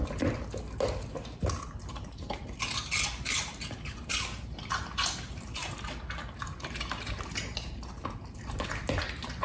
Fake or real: real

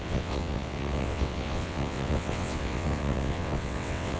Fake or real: fake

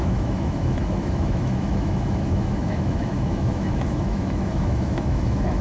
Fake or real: fake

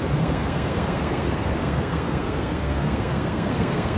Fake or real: fake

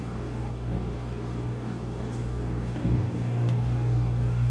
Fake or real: fake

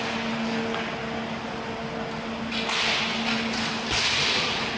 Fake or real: real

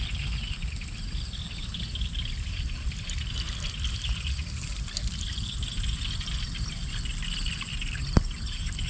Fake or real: real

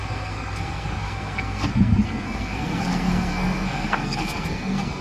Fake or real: fake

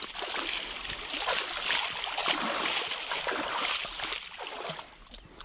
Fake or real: real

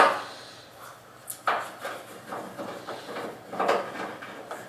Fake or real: real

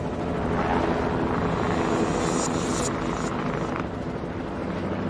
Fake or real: real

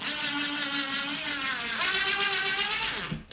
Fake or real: real